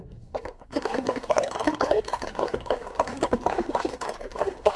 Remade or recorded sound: remade